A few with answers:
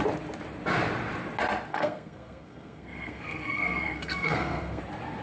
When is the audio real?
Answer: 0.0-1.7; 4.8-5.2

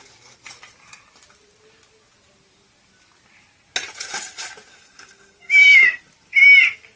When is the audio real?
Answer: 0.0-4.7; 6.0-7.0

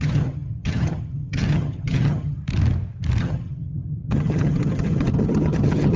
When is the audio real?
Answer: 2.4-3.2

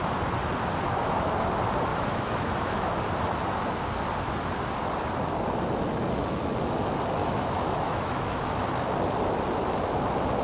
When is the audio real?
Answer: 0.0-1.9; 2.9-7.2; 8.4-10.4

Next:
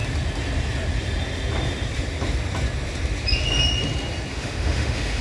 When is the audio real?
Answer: 0.0-4.3

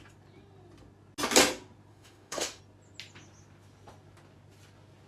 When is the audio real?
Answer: 0.0-1.9; 2.6-5.1